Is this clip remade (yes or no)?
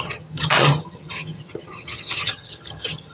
yes